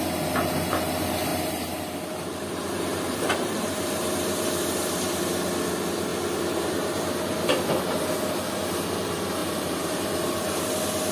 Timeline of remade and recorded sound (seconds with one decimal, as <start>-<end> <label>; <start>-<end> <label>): 0.0-1.3 recorded; 1.3-5.3 remade; 5.3-6.1 recorded; 6.1-7.7 remade; 7.7-9.4 recorded; 9.4-10.7 remade; 10.7-11.1 recorded

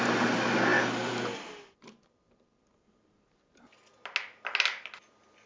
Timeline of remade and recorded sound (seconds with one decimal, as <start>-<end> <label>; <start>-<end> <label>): 0.0-5.5 recorded

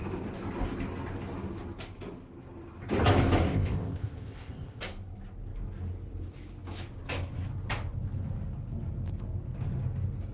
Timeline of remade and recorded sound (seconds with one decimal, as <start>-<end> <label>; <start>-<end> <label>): 0.0-3.5 recorded; 3.5-4.8 remade; 4.8-10.3 recorded